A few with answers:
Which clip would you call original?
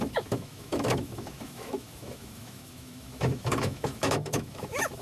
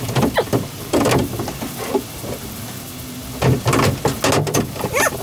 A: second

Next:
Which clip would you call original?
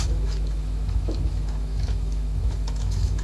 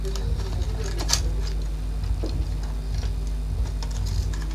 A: second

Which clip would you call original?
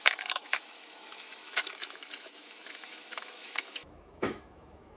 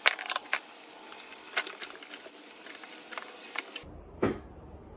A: second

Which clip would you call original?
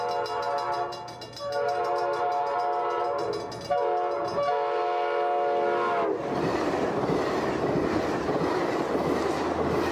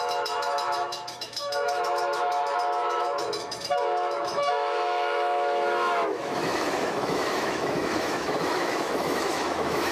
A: first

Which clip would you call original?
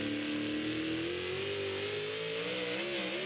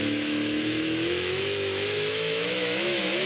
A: first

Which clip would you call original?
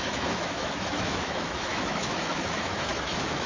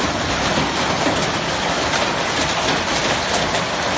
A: second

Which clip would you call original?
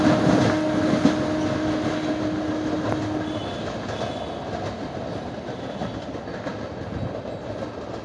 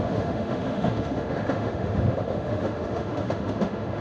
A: first